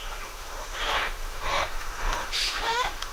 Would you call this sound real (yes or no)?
no